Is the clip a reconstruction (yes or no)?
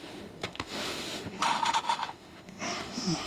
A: yes